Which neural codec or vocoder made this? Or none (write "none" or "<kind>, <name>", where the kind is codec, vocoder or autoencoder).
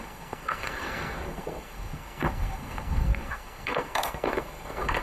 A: codec, SNAC